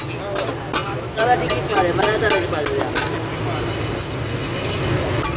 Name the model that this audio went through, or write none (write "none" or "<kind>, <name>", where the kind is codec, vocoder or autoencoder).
none